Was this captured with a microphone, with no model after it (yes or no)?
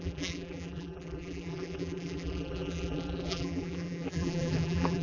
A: no